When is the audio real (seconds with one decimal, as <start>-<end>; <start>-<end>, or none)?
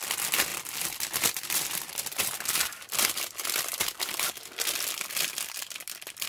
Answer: 0.0-0.5; 4.3-6.3